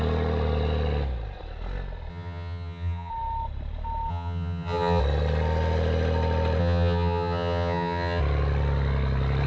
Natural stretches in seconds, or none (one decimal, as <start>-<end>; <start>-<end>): 0.0-2.1; 3.1-4.1; 5.0-6.6; 8.2-9.5